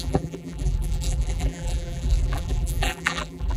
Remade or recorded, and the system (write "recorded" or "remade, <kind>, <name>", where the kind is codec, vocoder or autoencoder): remade, vocoder, BigVGAN v2